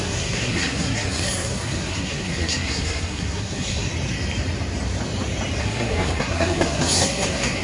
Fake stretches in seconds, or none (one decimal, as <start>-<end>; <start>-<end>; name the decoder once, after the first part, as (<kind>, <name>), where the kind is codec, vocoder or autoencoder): 0.0-3.9 (codec, SNAC); 5.6-7.6